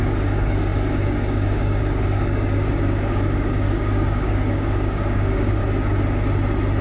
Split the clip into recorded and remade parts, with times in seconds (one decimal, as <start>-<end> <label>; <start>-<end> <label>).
0.0-5.6 remade; 5.6-6.8 recorded